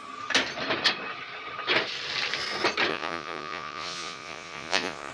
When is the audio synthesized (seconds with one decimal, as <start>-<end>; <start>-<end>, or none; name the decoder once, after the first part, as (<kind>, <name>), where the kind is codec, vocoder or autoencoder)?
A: 2.9-5.1 (vocoder, Vocos)